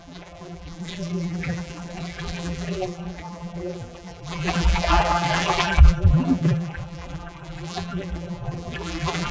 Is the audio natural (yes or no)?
no